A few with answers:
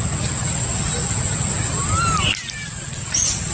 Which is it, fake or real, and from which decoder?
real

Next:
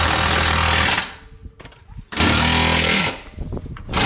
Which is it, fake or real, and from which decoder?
real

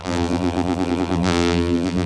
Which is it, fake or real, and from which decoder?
fake, vocoder, BigVGAN v2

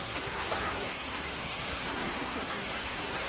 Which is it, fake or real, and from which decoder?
fake, codec, SNAC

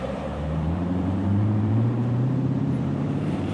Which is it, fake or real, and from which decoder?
fake, vocoder, BigVGAN v2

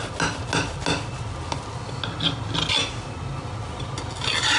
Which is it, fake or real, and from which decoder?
real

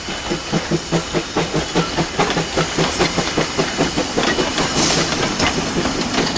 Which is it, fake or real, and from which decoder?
real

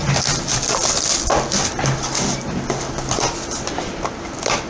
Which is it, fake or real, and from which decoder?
real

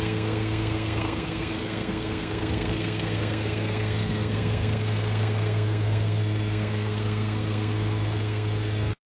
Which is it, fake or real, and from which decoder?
fake, codec, SNAC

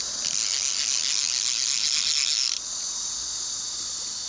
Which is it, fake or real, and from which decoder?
real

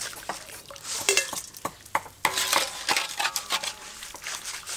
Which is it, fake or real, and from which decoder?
real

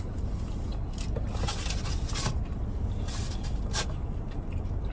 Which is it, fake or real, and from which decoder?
real